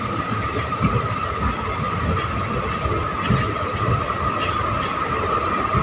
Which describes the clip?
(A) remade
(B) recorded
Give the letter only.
B